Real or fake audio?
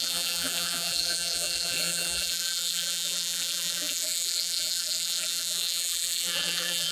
fake